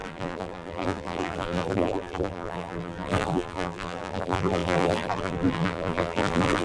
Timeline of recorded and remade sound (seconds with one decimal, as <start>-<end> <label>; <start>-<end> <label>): 0.0-6.6 remade